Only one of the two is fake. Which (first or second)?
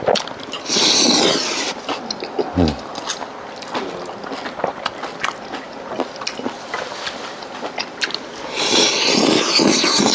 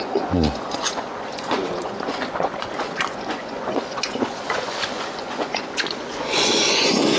second